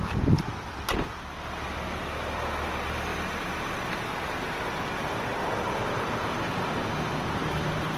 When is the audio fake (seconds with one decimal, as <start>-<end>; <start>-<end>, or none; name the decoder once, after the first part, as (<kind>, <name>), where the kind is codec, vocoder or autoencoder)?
none